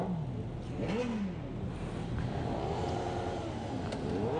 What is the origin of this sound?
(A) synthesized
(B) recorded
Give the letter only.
B